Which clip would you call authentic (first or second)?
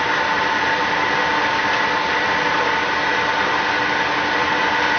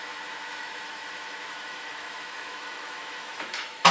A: first